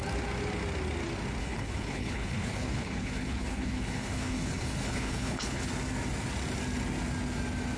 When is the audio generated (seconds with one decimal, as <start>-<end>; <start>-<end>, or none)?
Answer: 1.4-5.7